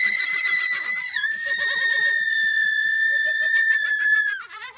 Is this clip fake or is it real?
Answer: fake